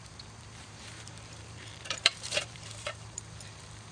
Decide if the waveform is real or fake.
fake